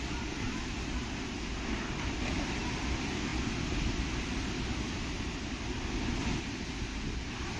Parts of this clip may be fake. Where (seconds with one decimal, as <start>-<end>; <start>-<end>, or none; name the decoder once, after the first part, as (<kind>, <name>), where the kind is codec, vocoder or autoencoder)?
none